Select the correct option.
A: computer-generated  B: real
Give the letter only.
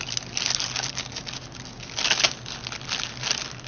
B